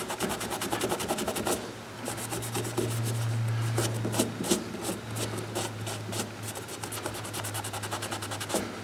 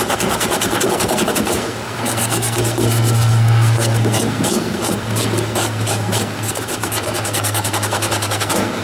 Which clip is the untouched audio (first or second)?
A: first